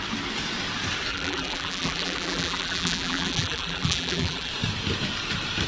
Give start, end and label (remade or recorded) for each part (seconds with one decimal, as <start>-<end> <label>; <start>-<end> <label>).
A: 0.0-1.1 recorded; 1.1-4.5 remade; 4.5-5.7 recorded

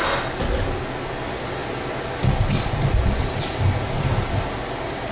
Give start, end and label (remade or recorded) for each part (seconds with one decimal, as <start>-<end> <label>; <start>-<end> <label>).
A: 0.0-5.1 recorded

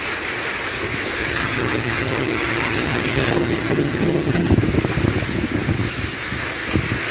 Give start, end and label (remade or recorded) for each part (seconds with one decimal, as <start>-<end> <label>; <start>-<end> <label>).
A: 0.0-1.2 recorded; 1.2-4.5 remade; 4.5-7.1 recorded